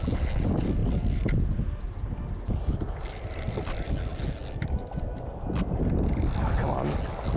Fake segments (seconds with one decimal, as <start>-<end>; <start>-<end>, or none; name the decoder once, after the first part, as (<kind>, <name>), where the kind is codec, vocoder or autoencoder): none